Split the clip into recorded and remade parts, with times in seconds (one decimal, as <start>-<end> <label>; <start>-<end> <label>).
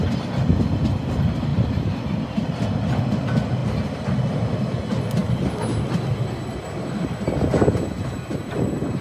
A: 0.0-9.0 recorded